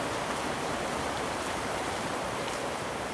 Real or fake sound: fake